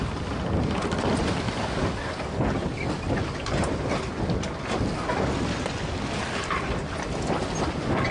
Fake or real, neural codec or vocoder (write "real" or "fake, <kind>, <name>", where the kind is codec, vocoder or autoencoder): real